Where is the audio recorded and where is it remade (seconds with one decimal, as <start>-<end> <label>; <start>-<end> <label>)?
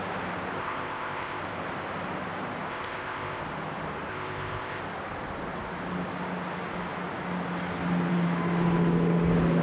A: 0.0-0.6 recorded; 0.6-1.4 remade; 1.4-2.7 recorded; 2.7-3.4 remade; 3.4-4.1 recorded; 4.1-4.8 remade; 4.8-9.6 recorded